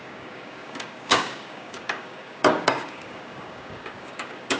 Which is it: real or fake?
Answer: fake